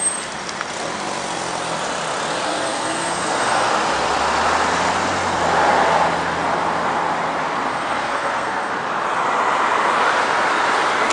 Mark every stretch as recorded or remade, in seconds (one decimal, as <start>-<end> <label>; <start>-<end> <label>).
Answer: 0.0-2.5 recorded; 2.5-3.7 remade; 3.7-7.7 recorded; 7.7-8.7 remade; 8.7-11.1 recorded